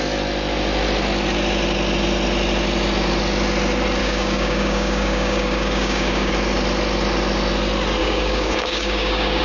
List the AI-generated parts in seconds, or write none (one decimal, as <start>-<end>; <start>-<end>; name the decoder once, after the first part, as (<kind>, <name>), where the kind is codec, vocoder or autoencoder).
4.0-6.3 (codec, DAC); 8.0-9.4

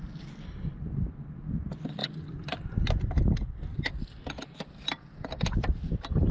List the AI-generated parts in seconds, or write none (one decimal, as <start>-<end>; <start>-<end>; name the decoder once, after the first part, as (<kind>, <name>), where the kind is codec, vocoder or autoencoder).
none

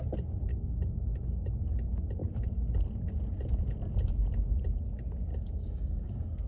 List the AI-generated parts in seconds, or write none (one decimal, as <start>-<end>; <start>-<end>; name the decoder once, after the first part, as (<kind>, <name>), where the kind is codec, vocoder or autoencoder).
0.5-1.5 (codec, DAC); 5.3-6.5

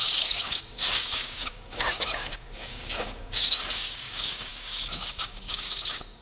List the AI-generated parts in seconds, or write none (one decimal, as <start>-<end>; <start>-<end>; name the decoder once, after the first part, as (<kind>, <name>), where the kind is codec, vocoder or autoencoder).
0.0-6.2 (codec, DAC)

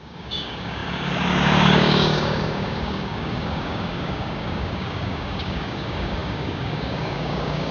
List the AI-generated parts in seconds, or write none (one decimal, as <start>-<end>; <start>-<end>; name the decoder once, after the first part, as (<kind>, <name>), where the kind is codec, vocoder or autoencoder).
0.0-7.7 (codec, DAC)

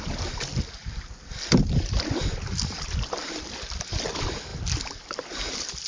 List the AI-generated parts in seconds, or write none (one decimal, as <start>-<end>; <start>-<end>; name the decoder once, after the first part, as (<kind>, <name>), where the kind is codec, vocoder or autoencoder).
none

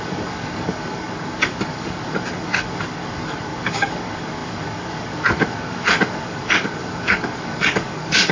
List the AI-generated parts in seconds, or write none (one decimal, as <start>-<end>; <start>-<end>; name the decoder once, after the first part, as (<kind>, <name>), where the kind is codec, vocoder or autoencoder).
0.0-8.3 (codec, DAC)